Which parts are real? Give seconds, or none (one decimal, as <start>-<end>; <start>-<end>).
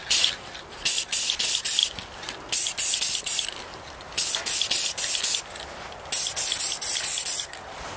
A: 1.4-8.0